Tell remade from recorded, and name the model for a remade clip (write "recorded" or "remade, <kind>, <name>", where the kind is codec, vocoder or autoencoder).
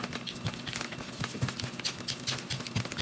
recorded